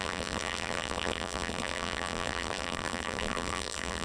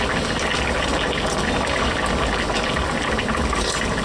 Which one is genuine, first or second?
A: second